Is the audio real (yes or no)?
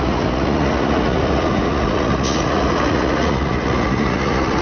no